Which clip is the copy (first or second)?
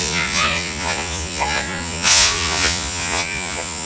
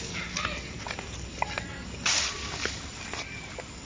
first